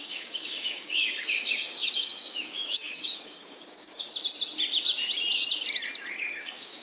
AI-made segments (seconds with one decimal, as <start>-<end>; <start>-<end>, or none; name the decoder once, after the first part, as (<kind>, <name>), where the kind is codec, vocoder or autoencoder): 0.0-4.1 (codec, DAC); 6.1-6.8